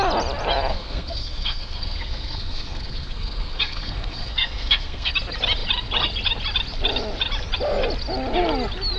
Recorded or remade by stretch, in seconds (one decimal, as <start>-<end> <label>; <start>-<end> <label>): 0.0-0.7 recorded; 0.7-5.1 remade; 5.1-9.0 recorded